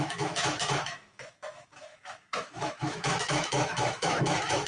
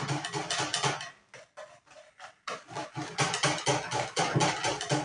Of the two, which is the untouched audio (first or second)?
second